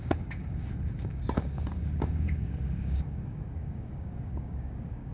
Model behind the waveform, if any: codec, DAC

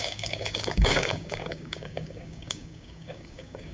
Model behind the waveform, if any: codec, DAC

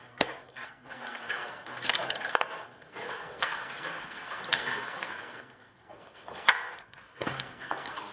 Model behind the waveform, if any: codec, SNAC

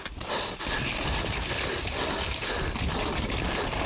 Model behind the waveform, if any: none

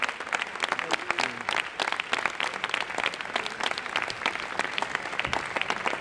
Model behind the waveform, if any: none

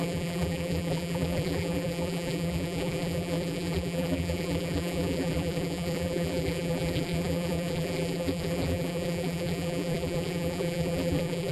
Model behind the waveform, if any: vocoder, BigVGAN v2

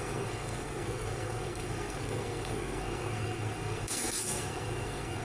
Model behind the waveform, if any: codec, SNAC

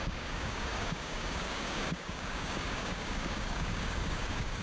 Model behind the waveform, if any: codec, DAC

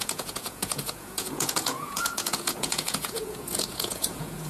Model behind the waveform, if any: vocoder, Vocos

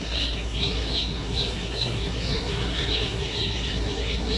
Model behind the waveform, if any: codec, SNAC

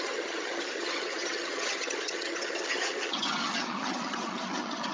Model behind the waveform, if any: vocoder, HiFi-GAN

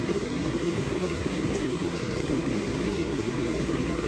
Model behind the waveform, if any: codec, SNAC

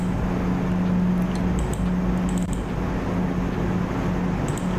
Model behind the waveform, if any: none